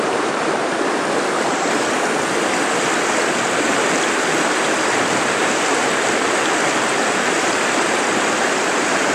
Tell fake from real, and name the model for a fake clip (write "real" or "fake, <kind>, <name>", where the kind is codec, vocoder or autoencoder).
fake, vocoder, BigVGAN v2